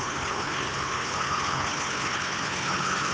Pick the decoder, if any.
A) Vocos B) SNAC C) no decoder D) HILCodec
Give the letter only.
D